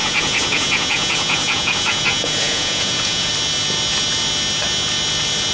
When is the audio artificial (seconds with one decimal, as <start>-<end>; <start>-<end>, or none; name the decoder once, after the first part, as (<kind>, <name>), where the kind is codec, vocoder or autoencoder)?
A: 0.0-3.3 (vocoder, Vocos)